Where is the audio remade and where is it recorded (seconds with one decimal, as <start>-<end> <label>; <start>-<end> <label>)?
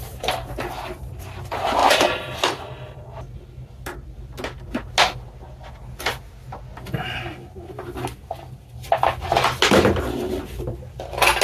0.0-0.6 remade; 0.6-1.8 recorded; 1.8-3.0 remade; 3.0-11.4 recorded